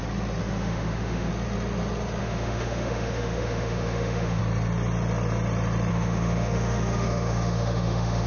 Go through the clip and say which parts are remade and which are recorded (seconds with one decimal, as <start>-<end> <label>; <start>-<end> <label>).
0.0-0.4 recorded; 0.4-1.3 remade; 1.3-2.2 recorded; 2.2-4.4 remade; 4.4-5.9 recorded; 5.9-8.3 remade